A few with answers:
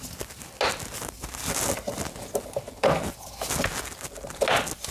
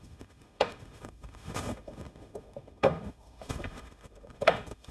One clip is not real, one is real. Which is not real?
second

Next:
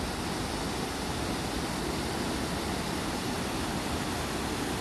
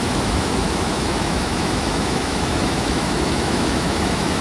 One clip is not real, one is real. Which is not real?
second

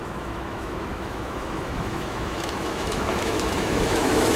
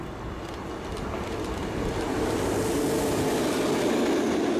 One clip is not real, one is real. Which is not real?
first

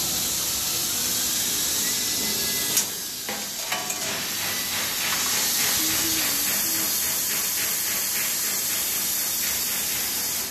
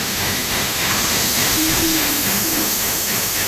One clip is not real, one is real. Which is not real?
second